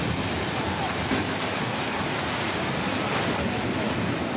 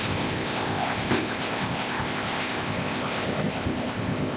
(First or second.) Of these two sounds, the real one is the first